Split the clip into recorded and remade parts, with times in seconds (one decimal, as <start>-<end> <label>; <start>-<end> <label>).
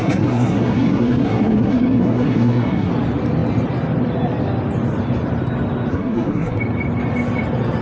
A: 0.0-2.9 remade; 2.9-5.9 recorded; 5.9-6.6 remade; 6.6-7.8 recorded